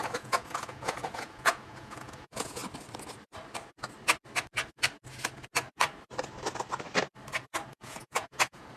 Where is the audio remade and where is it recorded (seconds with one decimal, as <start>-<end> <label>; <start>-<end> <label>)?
0.0-2.6 remade; 2.6-7.7 recorded; 7.7-8.8 remade